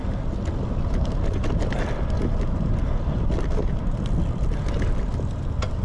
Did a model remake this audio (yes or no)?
no